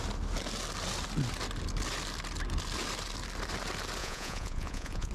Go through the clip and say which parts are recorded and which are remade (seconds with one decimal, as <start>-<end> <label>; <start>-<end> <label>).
0.0-4.0 recorded; 4.0-5.1 remade